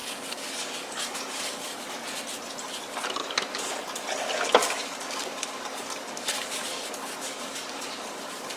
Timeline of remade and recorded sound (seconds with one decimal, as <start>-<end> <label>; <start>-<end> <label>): 0.0-1.9 remade; 1.9-3.2 recorded; 3.2-3.7 remade; 3.7-4.5 recorded; 4.5-8.6 remade